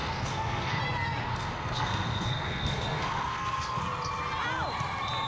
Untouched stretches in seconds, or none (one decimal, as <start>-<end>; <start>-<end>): 0.8-1.3; 3.8-5.3